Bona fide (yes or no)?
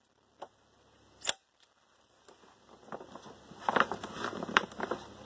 yes